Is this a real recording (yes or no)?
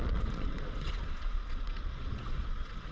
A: no